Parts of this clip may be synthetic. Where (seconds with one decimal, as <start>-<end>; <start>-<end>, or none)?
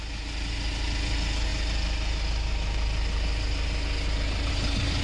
none